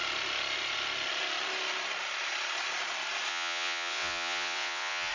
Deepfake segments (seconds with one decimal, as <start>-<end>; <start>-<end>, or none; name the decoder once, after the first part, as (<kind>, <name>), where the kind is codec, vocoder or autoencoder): 3.3-5.1 (vocoder, WaveNeXt)